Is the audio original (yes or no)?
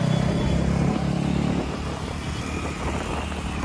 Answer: yes